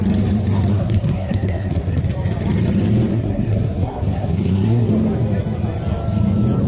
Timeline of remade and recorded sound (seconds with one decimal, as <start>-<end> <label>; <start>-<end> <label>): 0.0-0.7 recorded; 0.7-2.0 remade; 2.0-3.1 recorded; 3.1-4.9 remade; 4.9-6.7 recorded

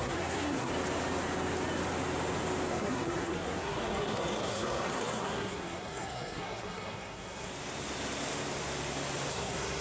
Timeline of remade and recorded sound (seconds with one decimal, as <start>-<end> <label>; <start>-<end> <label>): 0.0-0.7 remade; 0.7-2.7 recorded; 2.7-7.5 remade; 7.5-9.3 recorded; 9.3-9.8 remade